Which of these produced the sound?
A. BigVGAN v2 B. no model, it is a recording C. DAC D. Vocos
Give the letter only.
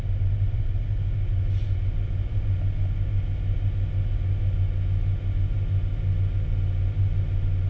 B